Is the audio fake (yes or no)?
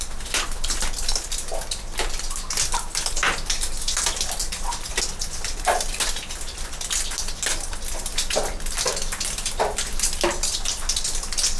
no